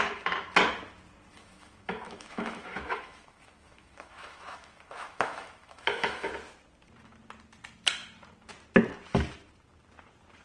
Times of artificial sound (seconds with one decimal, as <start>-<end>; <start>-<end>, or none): 1.3-6.3